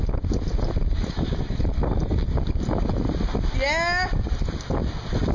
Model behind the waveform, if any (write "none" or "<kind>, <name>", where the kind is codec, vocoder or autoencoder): none